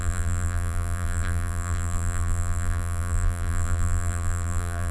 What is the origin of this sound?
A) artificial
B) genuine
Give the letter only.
A